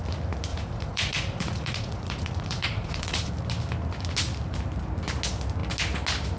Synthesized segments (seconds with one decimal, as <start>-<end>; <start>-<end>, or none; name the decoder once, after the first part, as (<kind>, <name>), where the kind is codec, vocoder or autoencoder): 0.5-3.3 (vocoder, Vocos)